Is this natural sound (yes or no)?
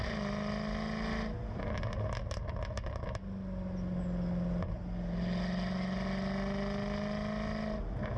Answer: yes